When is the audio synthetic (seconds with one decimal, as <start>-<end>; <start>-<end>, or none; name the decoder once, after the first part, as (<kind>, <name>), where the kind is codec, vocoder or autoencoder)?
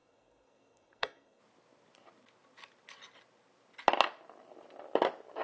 0.0-1.4 (codec, SNAC)